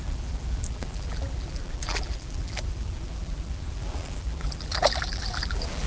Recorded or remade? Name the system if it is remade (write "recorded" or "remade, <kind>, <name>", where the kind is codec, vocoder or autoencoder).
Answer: remade, vocoder, BigVGAN v2